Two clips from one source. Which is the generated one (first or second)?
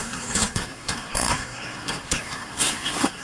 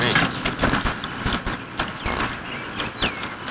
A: first